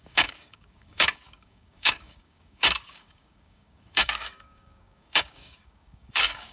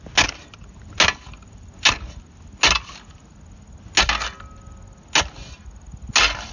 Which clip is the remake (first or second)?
first